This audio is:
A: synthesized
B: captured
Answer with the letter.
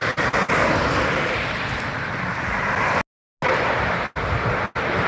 B